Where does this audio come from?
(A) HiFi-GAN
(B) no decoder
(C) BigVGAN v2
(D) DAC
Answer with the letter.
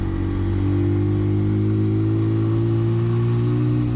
B